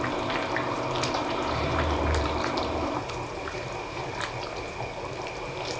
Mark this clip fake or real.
fake